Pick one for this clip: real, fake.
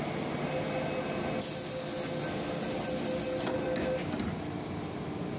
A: real